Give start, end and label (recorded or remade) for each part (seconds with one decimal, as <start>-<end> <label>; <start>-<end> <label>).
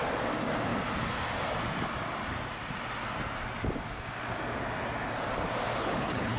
0.0-5.8 recorded; 5.8-6.4 remade